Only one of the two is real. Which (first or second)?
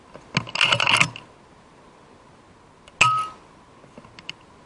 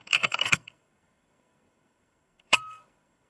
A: first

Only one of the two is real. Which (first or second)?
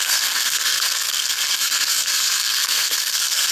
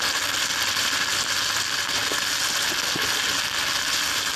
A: second